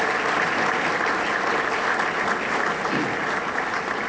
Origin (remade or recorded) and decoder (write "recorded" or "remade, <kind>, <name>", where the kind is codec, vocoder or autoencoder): recorded